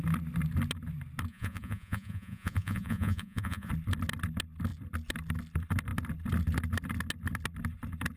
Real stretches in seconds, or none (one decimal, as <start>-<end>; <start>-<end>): 0.0-1.3; 3.7-8.2